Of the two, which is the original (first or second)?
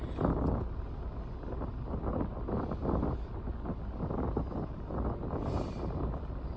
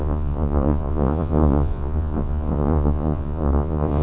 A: first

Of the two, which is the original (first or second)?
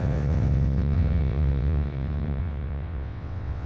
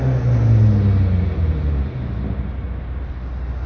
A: second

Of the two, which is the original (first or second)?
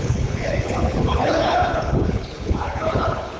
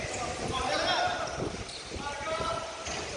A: second